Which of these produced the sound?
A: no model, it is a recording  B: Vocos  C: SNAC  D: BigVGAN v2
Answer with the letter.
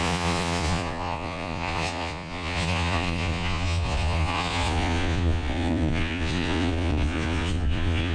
B